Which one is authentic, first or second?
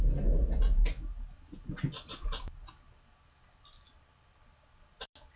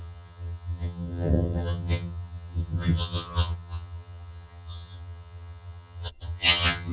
first